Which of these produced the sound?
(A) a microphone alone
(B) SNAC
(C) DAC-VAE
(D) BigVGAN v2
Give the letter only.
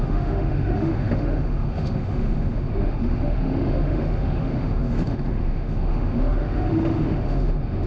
C